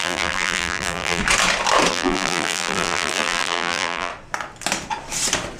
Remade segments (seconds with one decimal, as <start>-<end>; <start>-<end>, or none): 0.0-1.2; 1.9-4.1